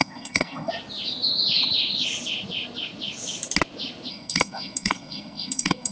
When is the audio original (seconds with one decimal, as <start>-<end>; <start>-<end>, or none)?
0.7-4.1